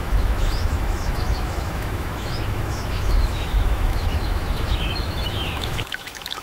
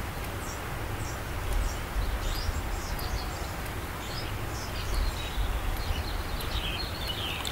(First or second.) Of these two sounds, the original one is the second